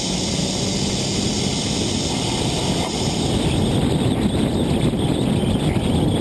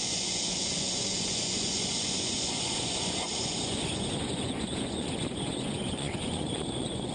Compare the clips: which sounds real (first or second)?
first